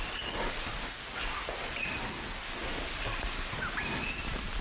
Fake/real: real